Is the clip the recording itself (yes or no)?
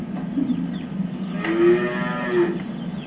yes